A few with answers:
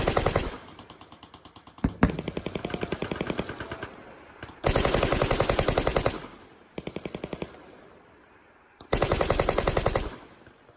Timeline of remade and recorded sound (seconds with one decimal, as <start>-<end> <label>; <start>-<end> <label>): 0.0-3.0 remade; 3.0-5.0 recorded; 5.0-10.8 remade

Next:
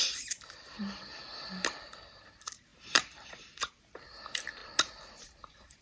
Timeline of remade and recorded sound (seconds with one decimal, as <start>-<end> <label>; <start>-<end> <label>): 0.0-0.8 remade; 0.8-2.1 recorded; 2.1-4.6 remade; 4.6-5.2 recorded; 5.2-5.8 remade

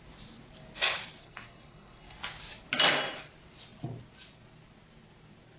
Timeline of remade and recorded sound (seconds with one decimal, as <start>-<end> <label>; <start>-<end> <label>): 0.0-1.2 recorded; 1.2-2.2 remade; 2.2-5.6 recorded

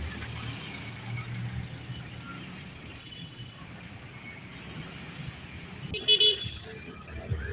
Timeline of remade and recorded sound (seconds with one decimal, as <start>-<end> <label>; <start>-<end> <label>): 0.0-3.0 recorded; 3.0-3.6 remade; 3.6-7.5 recorded

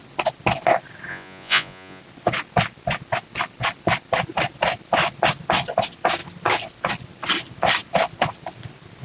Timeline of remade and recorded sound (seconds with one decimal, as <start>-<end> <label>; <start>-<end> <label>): 0.0-1.1 recorded; 1.1-2.0 remade; 2.0-9.0 recorded

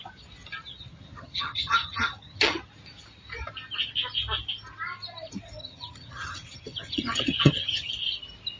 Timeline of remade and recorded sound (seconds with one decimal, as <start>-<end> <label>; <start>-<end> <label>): 0.0-0.9 recorded; 0.9-2.6 remade; 2.6-5.6 recorded; 5.6-7.9 remade; 7.9-8.6 recorded

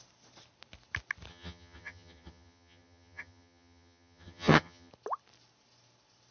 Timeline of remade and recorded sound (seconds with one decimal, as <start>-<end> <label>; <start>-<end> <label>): 0.0-1.3 recorded; 1.3-4.9 remade; 4.9-6.3 recorded

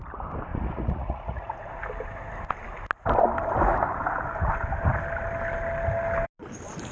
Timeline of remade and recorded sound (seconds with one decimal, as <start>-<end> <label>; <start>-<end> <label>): 0.0-0.5 recorded; 0.5-1.6 remade; 1.6-6.9 recorded